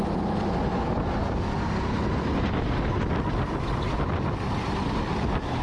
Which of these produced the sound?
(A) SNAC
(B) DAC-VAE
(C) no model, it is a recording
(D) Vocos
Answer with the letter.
C